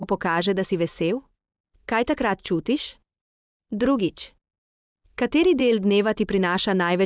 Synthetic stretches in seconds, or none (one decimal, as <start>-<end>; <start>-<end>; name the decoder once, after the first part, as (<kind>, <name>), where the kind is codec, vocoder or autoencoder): 0.0-0.7 (vocoder, BigVGAN v2); 3.0-4.0; 5.6-7.1